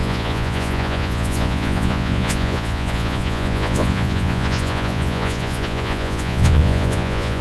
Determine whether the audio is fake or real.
fake